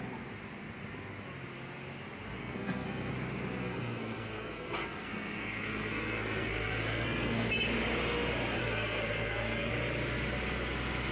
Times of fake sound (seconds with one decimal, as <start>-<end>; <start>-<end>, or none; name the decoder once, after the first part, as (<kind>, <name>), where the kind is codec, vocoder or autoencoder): 2.4-3.1 (codec, SNAC); 3.6-7.5; 8.6-9.7